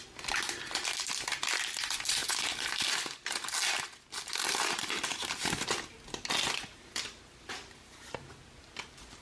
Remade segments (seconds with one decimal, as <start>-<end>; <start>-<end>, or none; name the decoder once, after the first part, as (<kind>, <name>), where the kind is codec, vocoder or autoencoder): none